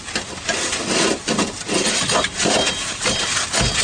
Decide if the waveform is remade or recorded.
recorded